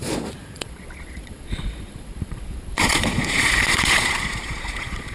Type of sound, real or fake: fake